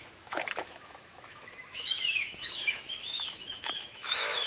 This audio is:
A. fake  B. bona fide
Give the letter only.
A